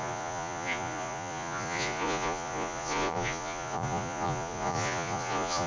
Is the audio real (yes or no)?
no